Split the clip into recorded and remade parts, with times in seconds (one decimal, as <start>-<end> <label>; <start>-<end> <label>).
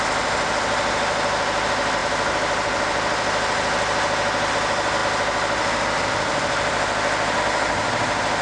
0.0-8.4 recorded